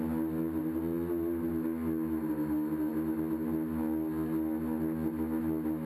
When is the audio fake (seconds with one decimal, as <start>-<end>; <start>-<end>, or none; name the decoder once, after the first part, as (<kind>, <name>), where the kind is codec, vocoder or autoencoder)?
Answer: none

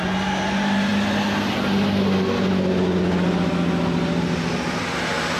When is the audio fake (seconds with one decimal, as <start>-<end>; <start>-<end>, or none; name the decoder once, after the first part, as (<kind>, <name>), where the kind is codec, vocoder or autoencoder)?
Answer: none

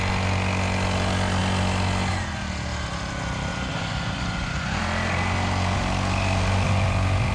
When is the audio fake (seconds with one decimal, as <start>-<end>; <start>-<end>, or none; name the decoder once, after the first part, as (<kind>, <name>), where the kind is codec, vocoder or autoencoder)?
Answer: 3.5-4.8 (vocoder, Vocos)